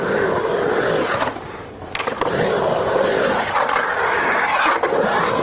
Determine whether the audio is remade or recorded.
recorded